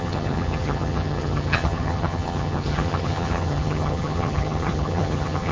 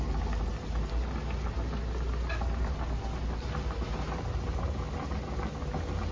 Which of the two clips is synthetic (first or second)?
first